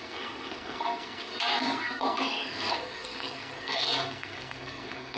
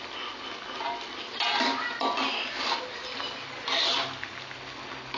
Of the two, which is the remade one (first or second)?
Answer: first